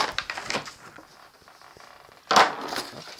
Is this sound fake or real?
real